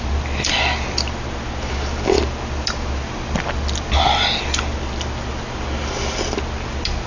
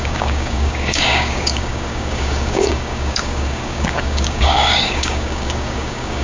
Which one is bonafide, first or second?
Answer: first